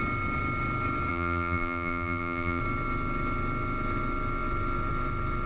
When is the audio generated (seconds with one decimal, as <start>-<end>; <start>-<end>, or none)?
1.1-2.6